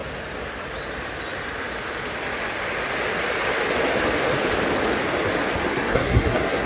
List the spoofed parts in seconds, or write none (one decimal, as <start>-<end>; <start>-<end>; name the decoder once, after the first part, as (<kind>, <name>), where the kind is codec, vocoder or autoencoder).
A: 5.7-6.7 (codec, SNAC)